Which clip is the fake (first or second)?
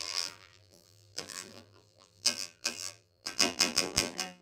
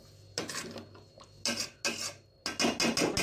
first